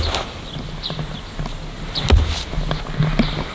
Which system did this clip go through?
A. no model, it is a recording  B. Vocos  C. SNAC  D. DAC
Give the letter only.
A